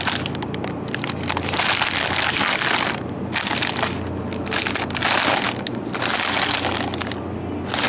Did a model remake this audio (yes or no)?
no